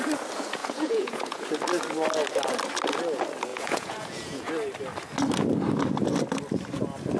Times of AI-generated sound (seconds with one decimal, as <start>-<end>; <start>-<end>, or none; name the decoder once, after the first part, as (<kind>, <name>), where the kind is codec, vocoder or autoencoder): 0.6-1.4 (vocoder, Vocos); 3.5-4.5